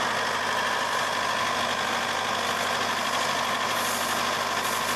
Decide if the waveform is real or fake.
real